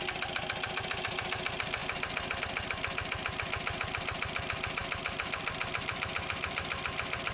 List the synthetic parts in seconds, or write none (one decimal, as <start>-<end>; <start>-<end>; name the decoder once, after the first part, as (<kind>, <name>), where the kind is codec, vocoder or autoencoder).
none